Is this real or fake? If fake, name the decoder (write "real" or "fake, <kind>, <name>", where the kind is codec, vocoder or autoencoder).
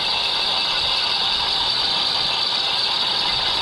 real